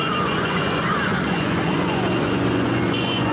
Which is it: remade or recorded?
remade